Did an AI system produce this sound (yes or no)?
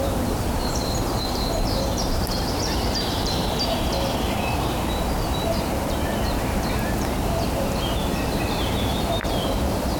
yes